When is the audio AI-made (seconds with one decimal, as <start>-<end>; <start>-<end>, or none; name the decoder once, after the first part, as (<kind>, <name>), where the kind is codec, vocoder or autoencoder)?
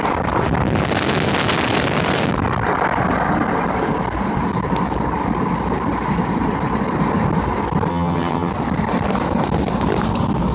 7.9-8.5 (vocoder, HiFi-GAN)